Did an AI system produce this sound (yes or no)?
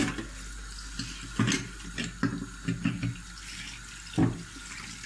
no